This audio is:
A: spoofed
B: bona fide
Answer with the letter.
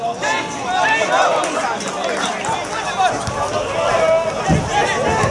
B